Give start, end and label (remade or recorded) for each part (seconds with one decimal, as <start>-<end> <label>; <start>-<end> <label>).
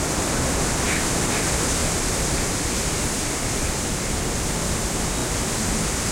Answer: 0.0-1.8 recorded; 1.8-4.2 remade; 4.2-6.1 recorded